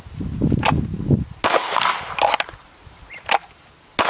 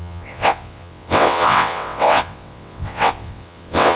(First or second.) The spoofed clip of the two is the second